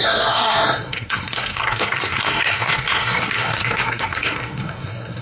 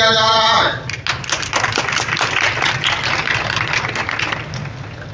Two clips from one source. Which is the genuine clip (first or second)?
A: second